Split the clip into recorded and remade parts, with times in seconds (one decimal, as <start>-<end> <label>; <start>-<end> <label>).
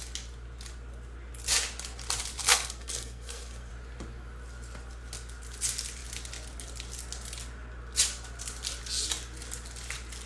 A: 0.0-2.4 recorded; 2.4-3.7 remade; 3.7-10.3 recorded